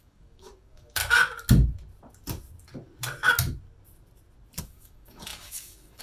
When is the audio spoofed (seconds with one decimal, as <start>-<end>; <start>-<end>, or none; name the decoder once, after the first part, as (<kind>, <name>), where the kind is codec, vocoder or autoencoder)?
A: 0.0-1.0 (codec, DAC); 4.6-6.0